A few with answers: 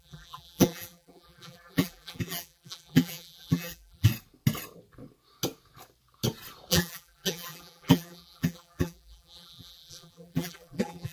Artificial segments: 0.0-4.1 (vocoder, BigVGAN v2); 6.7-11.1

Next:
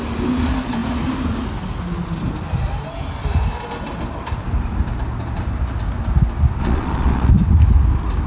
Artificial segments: 6.6-7.3 (vocoder, Vocos)

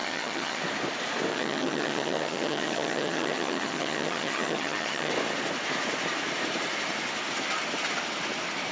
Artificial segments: 0.0-0.6 (vocoder, HiFi-GAN); 1.3-5.1

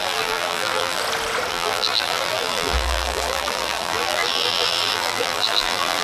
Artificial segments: 0.0-1.0 (vocoder, BigVGAN v2); 1.5-6.0